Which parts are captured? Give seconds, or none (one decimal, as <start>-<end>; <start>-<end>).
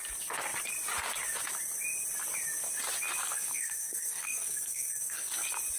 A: 0.0-3.2; 5.3-5.8